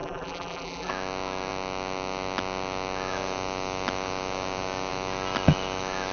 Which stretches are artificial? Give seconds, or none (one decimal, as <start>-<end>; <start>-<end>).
0.0-0.9